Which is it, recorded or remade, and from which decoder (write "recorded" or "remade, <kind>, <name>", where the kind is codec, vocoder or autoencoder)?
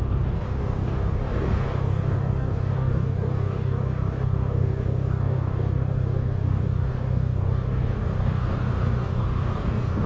remade, codec, DAC